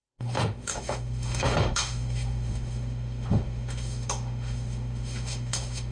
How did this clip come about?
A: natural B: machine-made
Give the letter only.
B